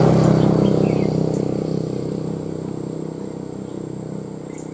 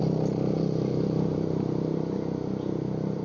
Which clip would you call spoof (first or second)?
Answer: second